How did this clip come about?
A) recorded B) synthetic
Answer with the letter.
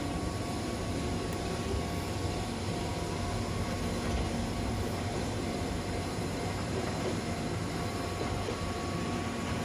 B